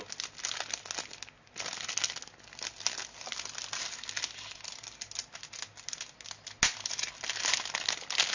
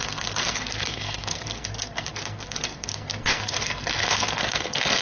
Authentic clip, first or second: first